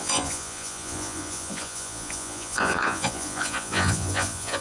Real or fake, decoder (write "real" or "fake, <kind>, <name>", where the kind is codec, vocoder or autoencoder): fake, vocoder, Vocos